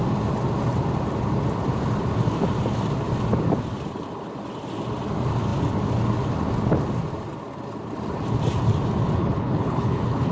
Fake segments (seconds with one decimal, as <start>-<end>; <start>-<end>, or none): 9.2-10.3